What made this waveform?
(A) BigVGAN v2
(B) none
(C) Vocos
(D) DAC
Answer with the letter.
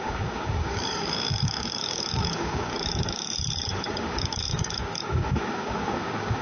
D